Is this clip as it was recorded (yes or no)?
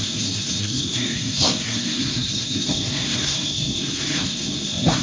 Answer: no